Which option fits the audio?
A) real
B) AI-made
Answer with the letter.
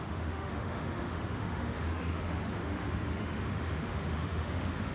B